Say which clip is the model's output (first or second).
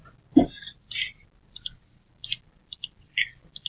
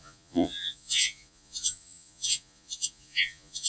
second